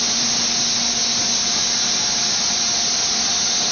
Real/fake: real